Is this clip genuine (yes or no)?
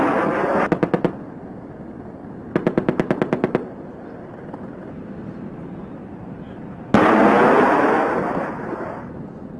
yes